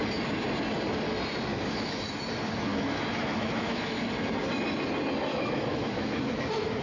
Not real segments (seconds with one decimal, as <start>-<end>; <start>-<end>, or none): 1.5-2.0; 2.7-4.1; 5.3-6.3